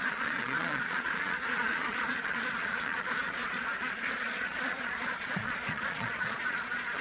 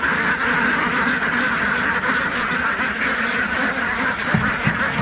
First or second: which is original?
second